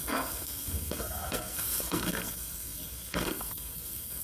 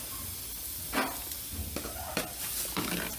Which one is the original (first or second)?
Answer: second